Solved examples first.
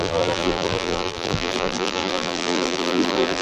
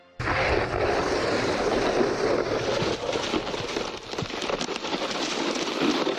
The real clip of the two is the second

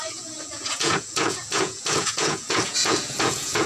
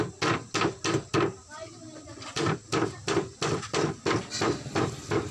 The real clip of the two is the second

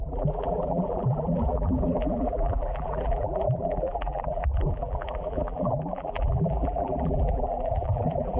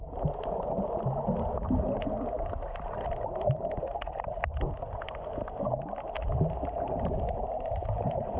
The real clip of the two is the second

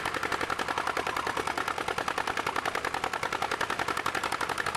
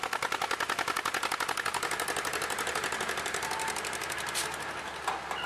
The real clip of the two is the second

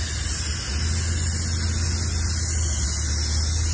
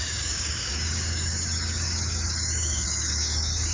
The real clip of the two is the first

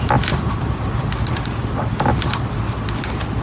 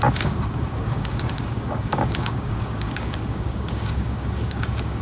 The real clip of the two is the first